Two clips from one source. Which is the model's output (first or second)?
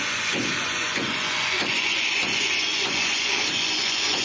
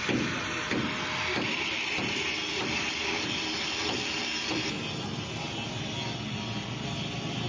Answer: first